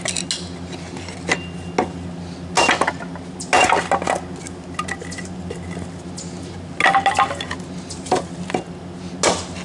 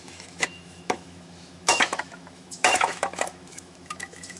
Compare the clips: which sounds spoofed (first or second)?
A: second